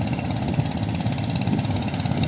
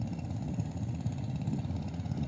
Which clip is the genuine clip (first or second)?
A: first